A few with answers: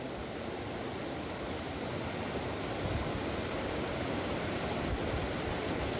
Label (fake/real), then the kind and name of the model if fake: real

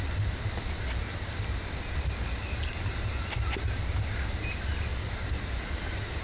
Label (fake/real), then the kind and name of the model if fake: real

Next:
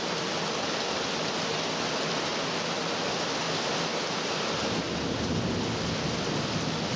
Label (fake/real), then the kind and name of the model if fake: real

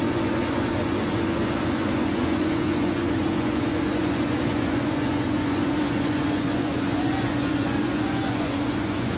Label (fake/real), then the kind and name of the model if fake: fake, vocoder, Vocos